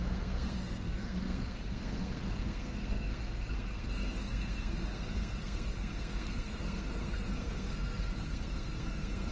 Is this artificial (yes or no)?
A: yes